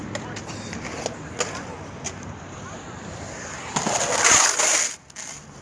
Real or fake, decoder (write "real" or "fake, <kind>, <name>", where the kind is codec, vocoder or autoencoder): real